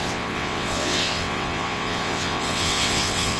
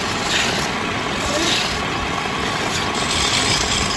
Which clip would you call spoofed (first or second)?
first